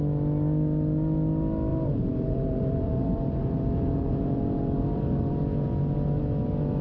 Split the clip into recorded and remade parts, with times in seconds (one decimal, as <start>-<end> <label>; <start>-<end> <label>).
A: 0.0-1.7 recorded; 1.7-5.4 remade; 5.4-6.8 recorded